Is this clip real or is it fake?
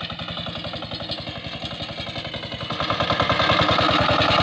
real